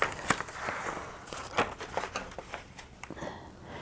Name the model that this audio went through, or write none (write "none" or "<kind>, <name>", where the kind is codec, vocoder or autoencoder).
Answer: none